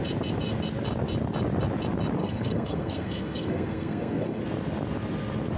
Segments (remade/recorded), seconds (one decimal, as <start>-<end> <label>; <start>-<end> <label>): 0.0-2.2 recorded; 2.2-4.4 remade; 4.4-5.6 recorded